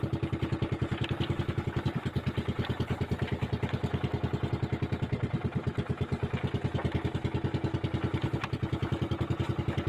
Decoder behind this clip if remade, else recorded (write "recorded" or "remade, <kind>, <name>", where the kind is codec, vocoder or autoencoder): recorded